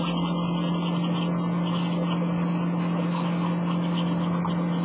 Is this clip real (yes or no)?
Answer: yes